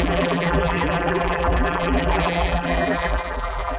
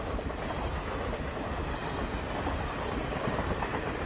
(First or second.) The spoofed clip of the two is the first